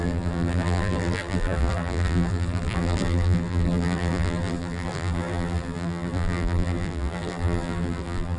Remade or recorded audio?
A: remade